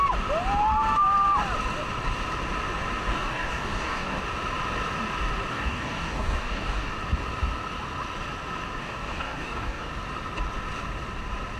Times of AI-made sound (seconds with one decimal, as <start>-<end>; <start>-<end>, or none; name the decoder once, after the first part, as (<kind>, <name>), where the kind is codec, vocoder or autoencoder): 3.1-4.2 (codec, DAC); 5.5-6.9; 8.8-9.9